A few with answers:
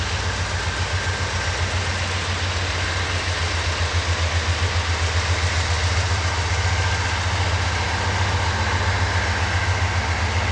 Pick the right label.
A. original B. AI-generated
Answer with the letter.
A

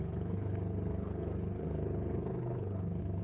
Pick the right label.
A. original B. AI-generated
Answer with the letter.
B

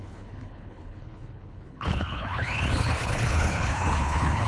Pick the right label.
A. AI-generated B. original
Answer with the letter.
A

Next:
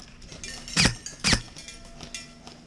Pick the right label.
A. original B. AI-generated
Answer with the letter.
A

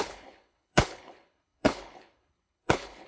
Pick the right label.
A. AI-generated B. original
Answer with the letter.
A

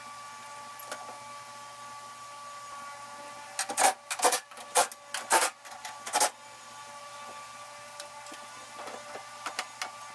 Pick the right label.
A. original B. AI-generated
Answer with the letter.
A